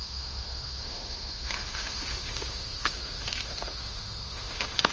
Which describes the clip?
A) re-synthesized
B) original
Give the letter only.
A